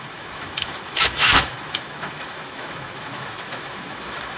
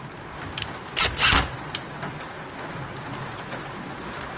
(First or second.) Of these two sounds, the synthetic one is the first